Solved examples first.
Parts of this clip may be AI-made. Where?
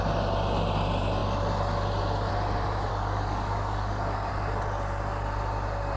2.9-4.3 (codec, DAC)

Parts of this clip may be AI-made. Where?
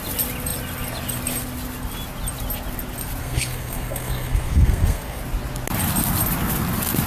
3.2-5.2 (codec, SNAC)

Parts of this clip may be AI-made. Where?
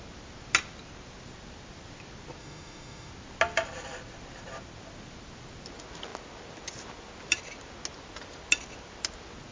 2.4-3.1 (autoencoder, DAC-VAE)